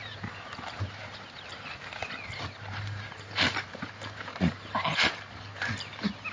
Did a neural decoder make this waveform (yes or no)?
yes